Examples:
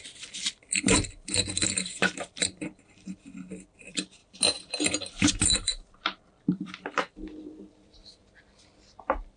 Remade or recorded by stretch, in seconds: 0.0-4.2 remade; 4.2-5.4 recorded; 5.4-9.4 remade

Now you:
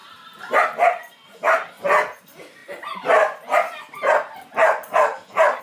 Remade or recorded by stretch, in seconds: 0.0-5.6 recorded

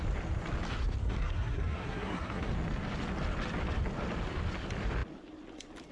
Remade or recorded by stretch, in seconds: 0.0-1.0 recorded; 1.0-2.5 remade; 2.5-5.9 recorded

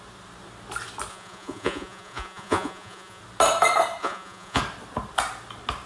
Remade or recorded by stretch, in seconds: 0.0-1.1 recorded; 1.1-3.2 remade; 3.2-4.0 recorded; 4.0-4.6 remade; 4.6-5.9 recorded

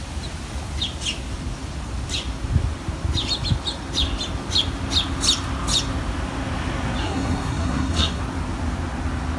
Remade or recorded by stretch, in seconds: 0.0-7.0 recorded; 7.0-8.2 remade; 8.2-9.4 recorded

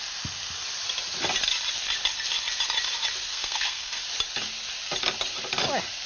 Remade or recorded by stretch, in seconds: 0.0-3.3 recorded; 3.3-4.0 remade; 4.0-6.1 recorded

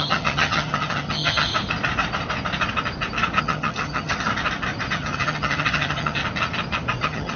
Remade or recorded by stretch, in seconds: 0.0-1.5 remade; 1.5-3.4 recorded; 3.4-4.3 remade; 4.3-4.9 recorded; 4.9-6.2 remade; 6.2-7.0 recorded; 7.0-7.4 remade